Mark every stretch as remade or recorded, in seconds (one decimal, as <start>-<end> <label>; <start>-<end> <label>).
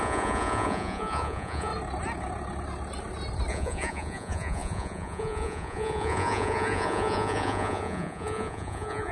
0.0-1.7 remade; 1.7-3.5 recorded; 3.5-9.1 remade